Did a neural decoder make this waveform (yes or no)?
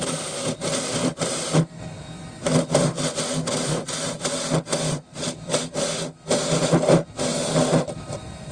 no